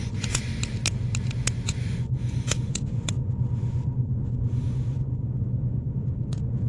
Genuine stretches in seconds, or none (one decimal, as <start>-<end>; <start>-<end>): 0.5-1.5

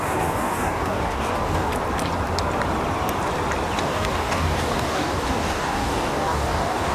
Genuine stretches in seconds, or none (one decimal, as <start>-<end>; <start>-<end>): 1.7-3.8

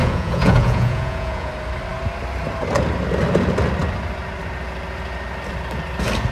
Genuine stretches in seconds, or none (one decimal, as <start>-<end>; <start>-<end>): 1.5-6.3

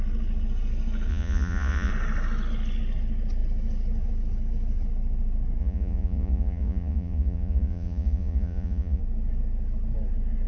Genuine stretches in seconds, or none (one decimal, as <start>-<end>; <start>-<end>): 0.0-1.1; 1.9-5.6; 9.0-10.5

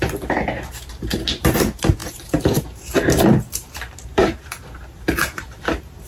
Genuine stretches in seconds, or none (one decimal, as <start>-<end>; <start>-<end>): none

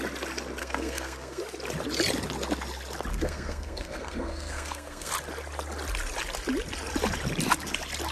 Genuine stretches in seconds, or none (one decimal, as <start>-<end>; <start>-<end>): 0.0-0.6; 1.4-3.1; 5.1-8.1

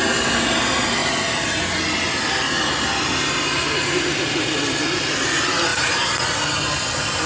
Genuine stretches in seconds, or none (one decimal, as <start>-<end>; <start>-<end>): 0.0-7.3